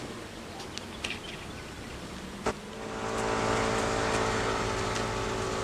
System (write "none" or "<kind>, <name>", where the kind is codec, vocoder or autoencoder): none